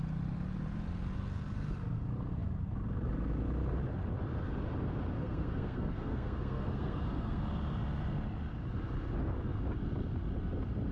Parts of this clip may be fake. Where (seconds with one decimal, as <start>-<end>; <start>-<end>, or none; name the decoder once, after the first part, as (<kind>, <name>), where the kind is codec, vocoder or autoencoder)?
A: 5.2-7.4 (codec, SNAC)